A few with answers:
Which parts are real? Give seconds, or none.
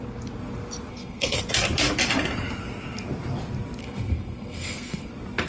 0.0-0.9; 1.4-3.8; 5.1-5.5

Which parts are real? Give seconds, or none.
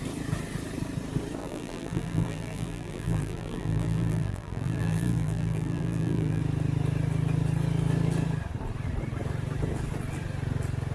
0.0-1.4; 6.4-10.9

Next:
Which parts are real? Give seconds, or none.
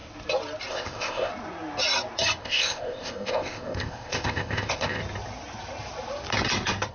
0.0-0.7; 1.3-2.4; 5.0-6.9